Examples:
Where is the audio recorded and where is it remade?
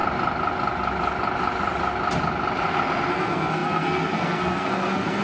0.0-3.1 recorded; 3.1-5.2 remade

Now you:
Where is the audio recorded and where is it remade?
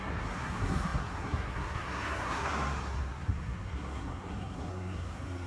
0.0-5.5 remade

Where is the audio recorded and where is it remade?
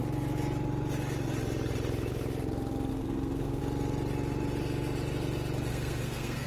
0.0-2.9 recorded; 2.9-3.6 remade; 3.6-5.7 recorded; 5.7-6.5 remade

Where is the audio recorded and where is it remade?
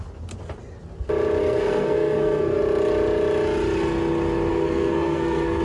0.0-1.4 recorded; 1.4-2.6 remade; 2.6-4.5 recorded; 4.5-5.6 remade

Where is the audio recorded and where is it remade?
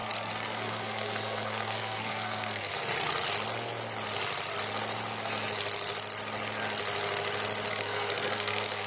0.0-2.7 remade; 2.7-7.7 recorded; 7.7-8.9 remade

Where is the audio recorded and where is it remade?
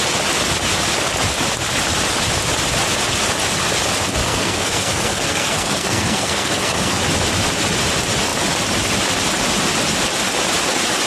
0.0-4.2 recorded; 4.2-7.0 remade; 7.0-11.1 recorded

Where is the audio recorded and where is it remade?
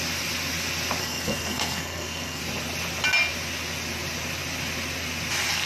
0.0-1.0 recorded; 1.0-2.4 remade; 2.4-5.7 recorded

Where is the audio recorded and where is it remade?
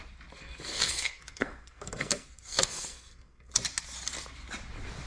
0.0-0.4 recorded; 0.4-3.5 remade; 3.5-5.1 recorded